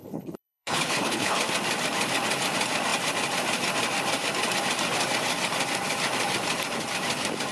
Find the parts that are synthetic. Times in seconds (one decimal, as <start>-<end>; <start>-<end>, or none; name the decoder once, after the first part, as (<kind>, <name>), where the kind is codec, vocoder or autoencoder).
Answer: 0.0-1.4 (codec, HILCodec)